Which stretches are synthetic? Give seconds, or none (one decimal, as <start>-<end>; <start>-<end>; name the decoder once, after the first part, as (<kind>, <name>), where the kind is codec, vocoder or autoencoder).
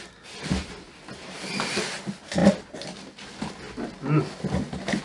none